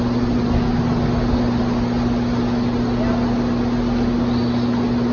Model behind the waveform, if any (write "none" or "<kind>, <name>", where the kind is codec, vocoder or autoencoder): none